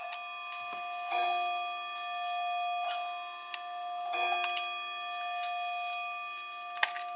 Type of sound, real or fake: real